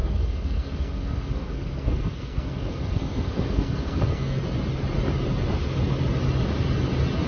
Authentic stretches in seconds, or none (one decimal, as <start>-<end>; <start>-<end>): 4.4-7.3